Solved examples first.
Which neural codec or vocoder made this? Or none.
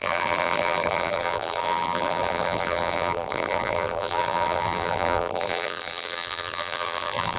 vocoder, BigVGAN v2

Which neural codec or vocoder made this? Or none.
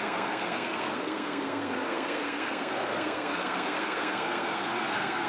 codec, SNAC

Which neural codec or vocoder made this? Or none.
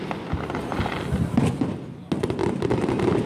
none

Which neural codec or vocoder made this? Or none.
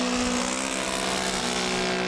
none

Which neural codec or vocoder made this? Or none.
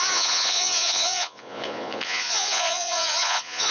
vocoder, Vocos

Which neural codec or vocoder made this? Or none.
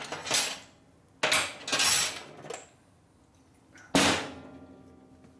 none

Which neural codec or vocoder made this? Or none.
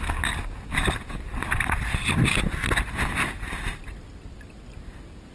none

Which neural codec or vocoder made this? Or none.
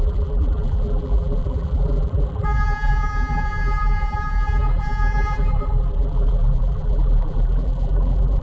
vocoder, BigVGAN v2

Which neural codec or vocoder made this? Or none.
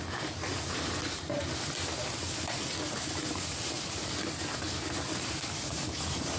none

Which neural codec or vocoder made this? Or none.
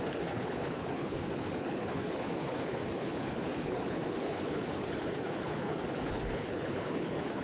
codec, HILCodec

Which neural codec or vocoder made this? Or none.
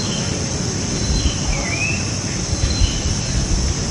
vocoder, BigVGAN v2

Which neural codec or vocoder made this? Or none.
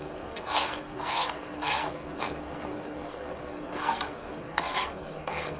codec, SNAC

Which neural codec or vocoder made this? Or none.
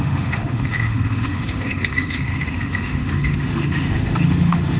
autoencoder, DAC-VAE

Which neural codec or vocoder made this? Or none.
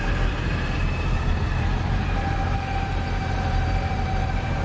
vocoder, BigVGAN v2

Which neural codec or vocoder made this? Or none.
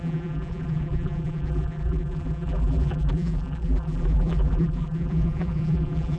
vocoder, BigVGAN v2